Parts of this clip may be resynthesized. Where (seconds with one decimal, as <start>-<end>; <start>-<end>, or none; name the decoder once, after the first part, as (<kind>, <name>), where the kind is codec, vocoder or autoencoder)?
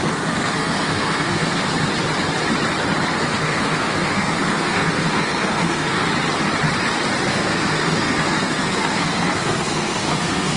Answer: 0.0-1.7 (codec, SNAC); 3.1-6.0; 7.3-10.6